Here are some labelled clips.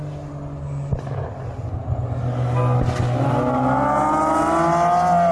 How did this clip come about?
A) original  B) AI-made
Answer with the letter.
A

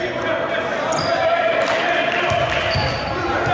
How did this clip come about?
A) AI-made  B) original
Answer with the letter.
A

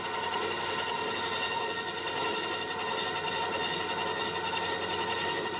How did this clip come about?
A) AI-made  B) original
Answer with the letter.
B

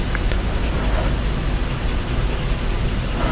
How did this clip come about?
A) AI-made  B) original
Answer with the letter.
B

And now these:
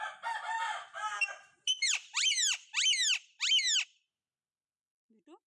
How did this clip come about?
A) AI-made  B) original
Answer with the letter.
B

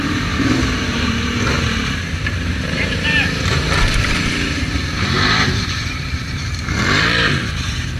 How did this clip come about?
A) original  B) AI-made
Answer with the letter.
B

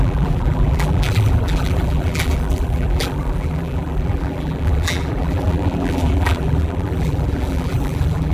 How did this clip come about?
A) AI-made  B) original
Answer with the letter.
A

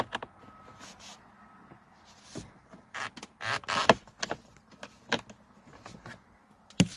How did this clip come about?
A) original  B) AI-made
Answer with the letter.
A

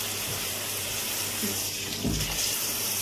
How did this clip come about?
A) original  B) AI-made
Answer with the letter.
B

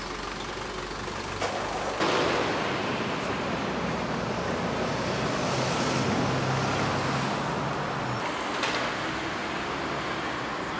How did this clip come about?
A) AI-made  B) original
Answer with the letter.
B